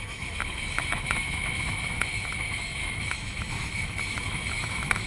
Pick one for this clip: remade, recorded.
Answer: remade